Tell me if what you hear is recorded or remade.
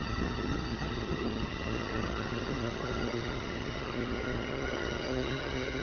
remade